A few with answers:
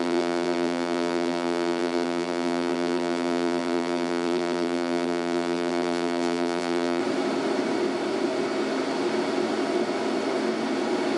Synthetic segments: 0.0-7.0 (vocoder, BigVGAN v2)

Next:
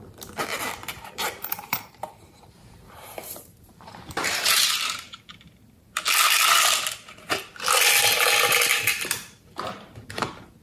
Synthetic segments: 0.8-5.2 (vocoder, BigVGAN v2)

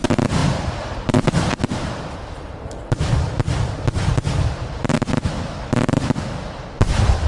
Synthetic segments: 0.4-3.6 (vocoder, BigVGAN v2); 4.8-7.3

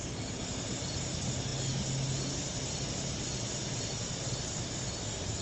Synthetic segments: 0.0-1.5 (vocoder, BigVGAN v2); 4.2-5.4

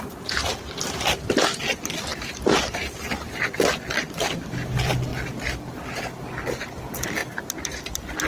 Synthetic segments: 0.0-8.3 (vocoder, BigVGAN v2)